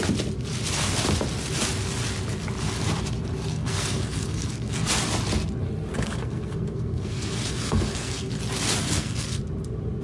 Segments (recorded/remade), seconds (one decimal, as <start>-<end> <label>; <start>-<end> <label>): 0.0-3.5 recorded; 3.5-4.9 remade; 4.9-5.9 recorded; 5.9-8.3 remade; 8.3-8.8 recorded; 8.8-9.4 remade; 9.4-10.0 recorded